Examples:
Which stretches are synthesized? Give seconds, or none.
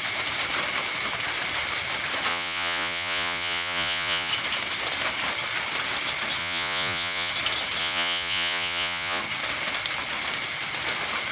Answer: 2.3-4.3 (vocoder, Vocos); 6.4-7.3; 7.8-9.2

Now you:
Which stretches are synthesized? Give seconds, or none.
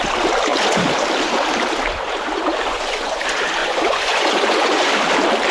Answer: 2.7-3.2 (vocoder, Vocos); 3.6-4.9